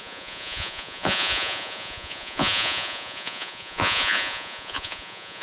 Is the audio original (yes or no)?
no